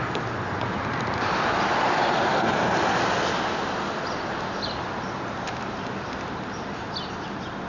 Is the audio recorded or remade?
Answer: recorded